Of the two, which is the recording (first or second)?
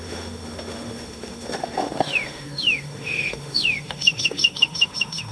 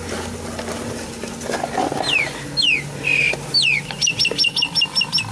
second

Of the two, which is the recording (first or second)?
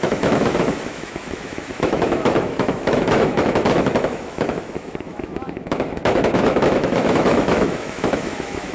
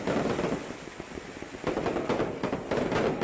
second